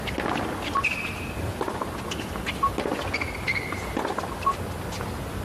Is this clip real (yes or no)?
yes